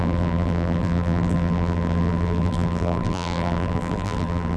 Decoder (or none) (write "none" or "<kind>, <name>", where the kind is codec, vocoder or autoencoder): vocoder, BigVGAN v2